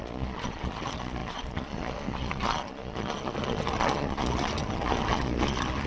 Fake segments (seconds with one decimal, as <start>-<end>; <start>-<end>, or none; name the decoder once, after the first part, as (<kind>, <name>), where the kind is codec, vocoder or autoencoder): 0.0-5.9 (vocoder, Vocos)